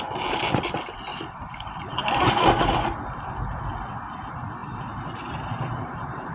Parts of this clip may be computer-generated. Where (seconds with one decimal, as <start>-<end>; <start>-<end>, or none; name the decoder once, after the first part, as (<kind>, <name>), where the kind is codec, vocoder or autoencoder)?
1.1-2.2 (vocoder, BigVGAN v2); 4.6-6.3